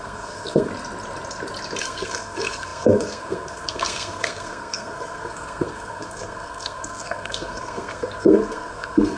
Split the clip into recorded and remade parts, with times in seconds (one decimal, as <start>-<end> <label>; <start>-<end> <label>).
0.0-0.7 remade; 0.7-1.8 recorded; 1.8-9.2 remade

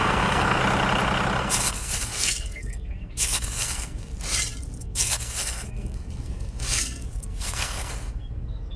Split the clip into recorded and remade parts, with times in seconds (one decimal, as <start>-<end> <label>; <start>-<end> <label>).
0.0-0.6 remade; 0.6-1.4 recorded; 1.4-4.1 remade; 4.1-4.8 recorded; 4.8-8.8 remade

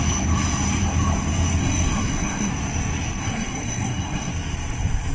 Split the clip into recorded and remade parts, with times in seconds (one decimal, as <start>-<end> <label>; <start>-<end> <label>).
0.0-1.6 recorded; 1.6-2.5 remade; 2.5-3.2 recorded; 3.2-4.3 remade; 4.3-5.1 recorded

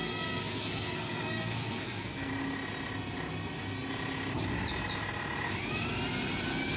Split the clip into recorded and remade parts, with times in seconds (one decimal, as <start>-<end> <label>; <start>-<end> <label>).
0.0-2.3 remade; 2.3-6.8 recorded

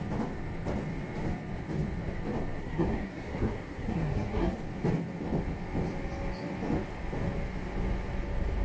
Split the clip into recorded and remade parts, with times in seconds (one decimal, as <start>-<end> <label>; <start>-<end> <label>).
0.0-2.6 recorded; 2.6-4.6 remade; 4.6-8.6 recorded

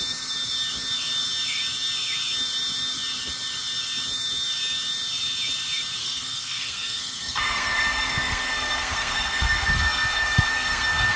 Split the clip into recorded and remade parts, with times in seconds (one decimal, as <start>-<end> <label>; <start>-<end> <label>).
0.0-6.0 recorded; 6.0-11.2 remade